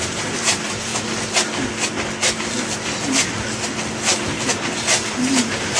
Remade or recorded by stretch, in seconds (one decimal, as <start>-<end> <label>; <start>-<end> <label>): 0.0-0.9 remade; 0.9-4.4 recorded; 4.4-5.8 remade